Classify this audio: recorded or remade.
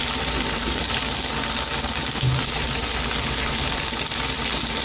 recorded